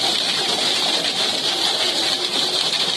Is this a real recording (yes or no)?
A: yes